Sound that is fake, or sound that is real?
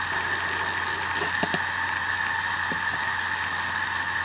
real